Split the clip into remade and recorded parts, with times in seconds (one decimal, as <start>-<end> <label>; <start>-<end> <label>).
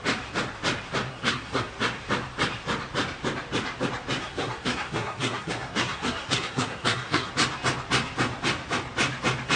0.0-1.1 recorded; 1.1-1.7 remade; 1.7-4.2 recorded; 4.2-7.3 remade; 7.3-9.6 recorded